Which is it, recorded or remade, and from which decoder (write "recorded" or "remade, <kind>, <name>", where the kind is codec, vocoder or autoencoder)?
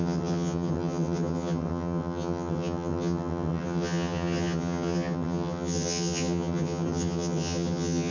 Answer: remade, vocoder, HiFi-GAN